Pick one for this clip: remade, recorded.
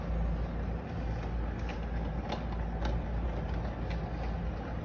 recorded